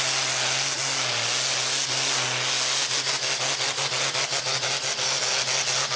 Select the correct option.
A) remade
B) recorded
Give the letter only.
B